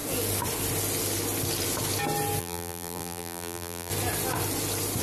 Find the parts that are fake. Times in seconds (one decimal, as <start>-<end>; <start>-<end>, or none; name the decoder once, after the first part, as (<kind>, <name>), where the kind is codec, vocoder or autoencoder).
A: 2.4-3.9 (vocoder, BigVGAN v2)